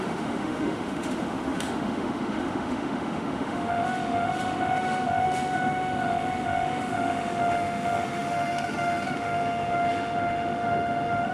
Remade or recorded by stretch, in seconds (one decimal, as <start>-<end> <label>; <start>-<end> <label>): 0.0-11.3 remade